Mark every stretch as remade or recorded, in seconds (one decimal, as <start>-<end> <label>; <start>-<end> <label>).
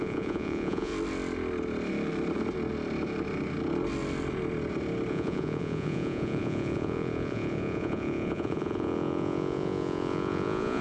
0.0-0.9 remade; 0.9-5.1 recorded; 5.1-10.8 remade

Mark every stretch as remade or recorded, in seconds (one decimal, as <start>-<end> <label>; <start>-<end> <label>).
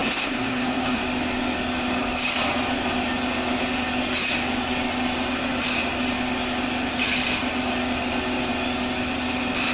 0.0-1.0 remade; 1.0-9.7 recorded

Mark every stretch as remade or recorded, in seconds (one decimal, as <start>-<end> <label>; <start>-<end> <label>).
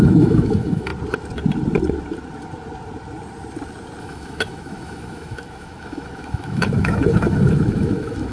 0.0-0.9 remade; 0.9-4.0 recorded; 4.0-8.3 remade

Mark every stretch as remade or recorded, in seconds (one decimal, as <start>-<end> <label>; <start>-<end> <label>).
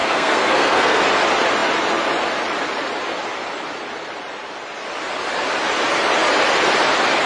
0.0-1.0 remade; 1.0-7.3 recorded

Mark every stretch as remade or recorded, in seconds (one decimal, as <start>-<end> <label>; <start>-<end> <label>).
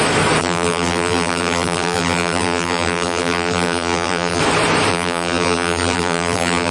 0.0-0.4 recorded; 0.4-4.4 remade; 4.4-4.9 recorded; 4.9-6.7 remade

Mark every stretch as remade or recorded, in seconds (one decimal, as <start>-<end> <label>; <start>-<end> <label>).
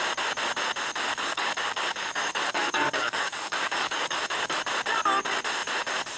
0.0-1.1 recorded; 1.1-4.6 remade; 4.6-6.2 recorded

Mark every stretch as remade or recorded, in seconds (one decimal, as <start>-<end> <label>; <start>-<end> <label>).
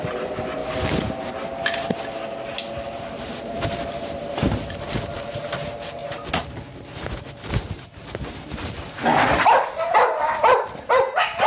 0.0-0.6 remade; 0.6-2.7 recorded; 2.7-6.0 remade; 6.0-10.9 recorded; 10.9-11.5 remade